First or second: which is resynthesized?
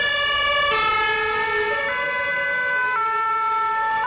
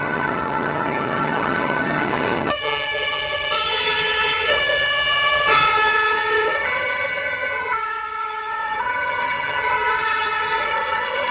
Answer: second